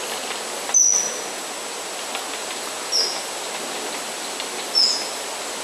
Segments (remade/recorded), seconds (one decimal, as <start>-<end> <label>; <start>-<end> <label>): 0.0-5.6 recorded

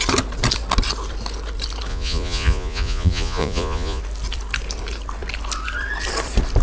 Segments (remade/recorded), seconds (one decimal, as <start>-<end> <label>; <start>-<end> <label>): 0.0-1.9 recorded; 1.9-4.0 remade; 4.0-6.6 recorded